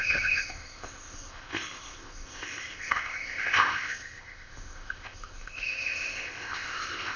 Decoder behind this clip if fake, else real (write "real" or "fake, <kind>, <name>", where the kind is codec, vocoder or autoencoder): fake, codec, ZipCodec